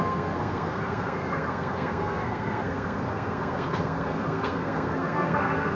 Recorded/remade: remade